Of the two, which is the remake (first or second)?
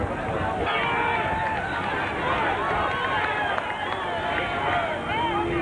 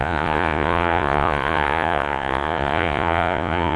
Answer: second